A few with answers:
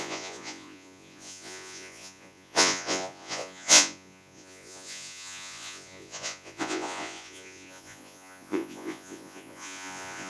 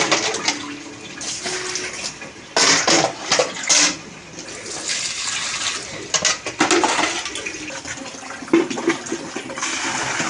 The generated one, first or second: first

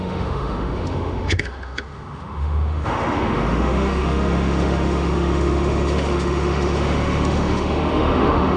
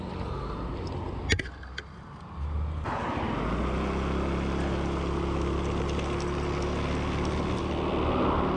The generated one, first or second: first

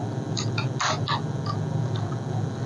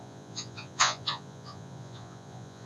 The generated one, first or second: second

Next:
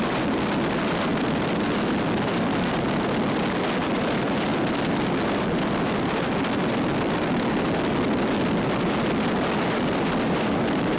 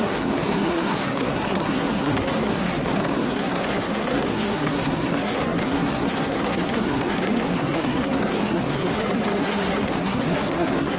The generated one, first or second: second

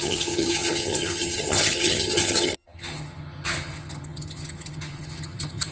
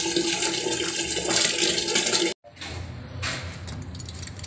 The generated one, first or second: first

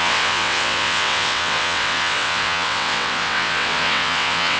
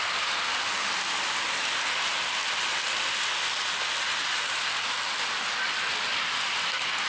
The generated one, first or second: first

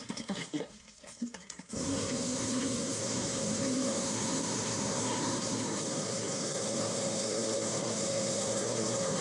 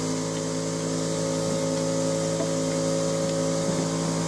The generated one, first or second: first